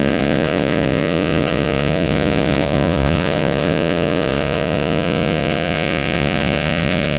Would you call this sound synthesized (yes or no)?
yes